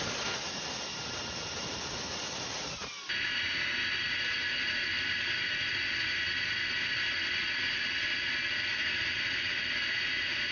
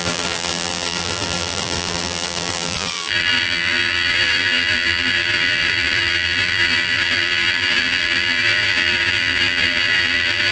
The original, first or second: first